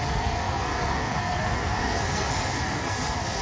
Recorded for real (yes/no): no